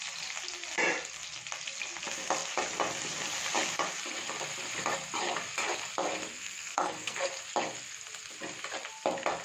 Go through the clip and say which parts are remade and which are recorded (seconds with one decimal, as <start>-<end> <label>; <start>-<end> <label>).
0.0-6.3 recorded; 6.3-7.3 remade; 7.3-9.4 recorded